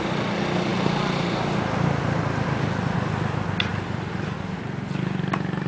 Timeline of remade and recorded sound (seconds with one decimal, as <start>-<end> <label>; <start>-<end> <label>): 0.0-5.7 recorded